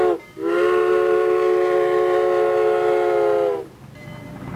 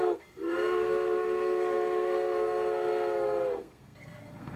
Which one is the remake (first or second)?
second